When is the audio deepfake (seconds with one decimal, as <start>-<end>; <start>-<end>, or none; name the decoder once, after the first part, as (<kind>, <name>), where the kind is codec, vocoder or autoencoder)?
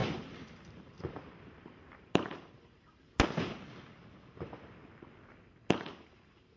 0.0-3.2 (vocoder, BigVGAN v2)